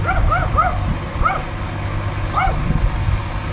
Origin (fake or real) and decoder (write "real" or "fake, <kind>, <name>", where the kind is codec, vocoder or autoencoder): real